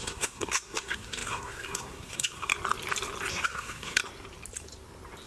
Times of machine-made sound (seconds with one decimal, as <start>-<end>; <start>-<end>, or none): 0.0-2.5; 3.3-4.0

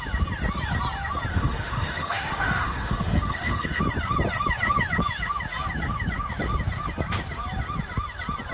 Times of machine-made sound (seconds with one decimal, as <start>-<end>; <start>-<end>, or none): 1.3-3.8

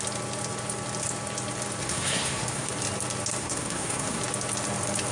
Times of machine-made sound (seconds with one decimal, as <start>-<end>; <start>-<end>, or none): 1.8-2.7; 3.4-4.2

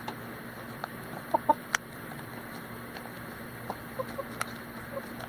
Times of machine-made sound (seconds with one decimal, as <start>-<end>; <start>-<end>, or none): 0.8-4.0

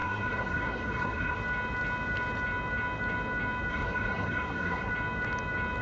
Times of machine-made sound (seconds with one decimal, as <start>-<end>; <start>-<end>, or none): 0.0-1.4; 3.7-4.9